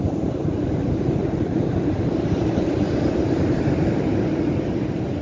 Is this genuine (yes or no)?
no